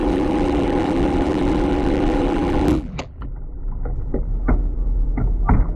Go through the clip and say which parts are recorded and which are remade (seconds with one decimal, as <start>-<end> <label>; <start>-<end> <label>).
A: 0.0-4.3 remade; 4.3-5.8 recorded